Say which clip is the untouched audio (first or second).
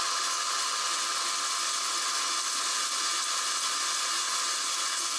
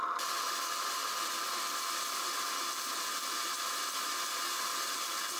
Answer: first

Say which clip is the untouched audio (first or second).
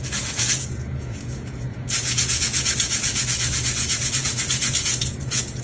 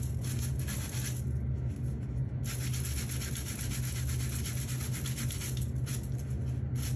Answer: second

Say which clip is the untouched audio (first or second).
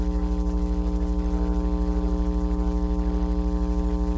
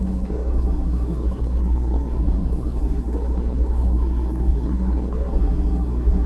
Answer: first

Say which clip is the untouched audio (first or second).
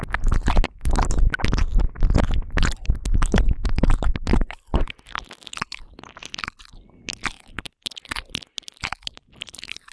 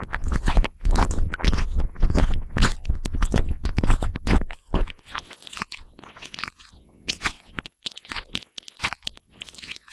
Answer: first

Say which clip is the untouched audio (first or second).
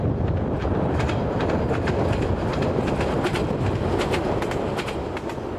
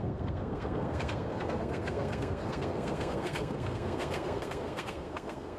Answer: first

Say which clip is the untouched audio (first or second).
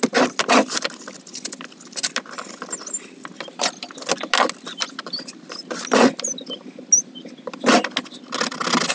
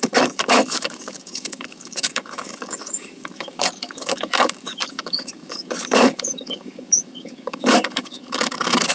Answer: first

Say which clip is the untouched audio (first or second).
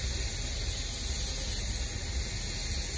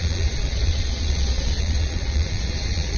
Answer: first